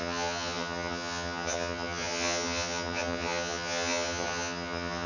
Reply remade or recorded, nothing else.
remade